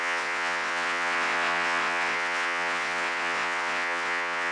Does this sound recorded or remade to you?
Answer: remade